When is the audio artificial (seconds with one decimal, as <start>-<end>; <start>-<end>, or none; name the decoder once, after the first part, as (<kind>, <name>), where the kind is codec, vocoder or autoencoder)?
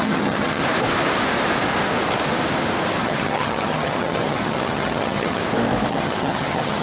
0.0-0.6 (vocoder, HiFi-GAN); 3.0-5.4; 5.9-6.8